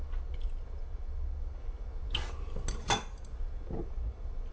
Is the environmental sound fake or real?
real